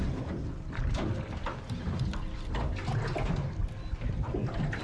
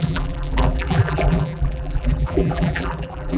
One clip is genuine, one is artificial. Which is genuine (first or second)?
first